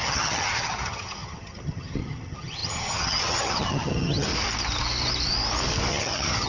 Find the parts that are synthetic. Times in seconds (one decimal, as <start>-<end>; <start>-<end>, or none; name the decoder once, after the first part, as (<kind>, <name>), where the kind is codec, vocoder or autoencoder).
0.0-4.3 (vocoder, HiFi-GAN); 5.9-6.5